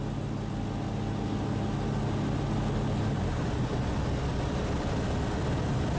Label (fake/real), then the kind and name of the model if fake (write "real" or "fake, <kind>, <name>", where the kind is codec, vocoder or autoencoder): real